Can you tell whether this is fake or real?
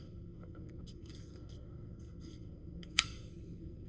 fake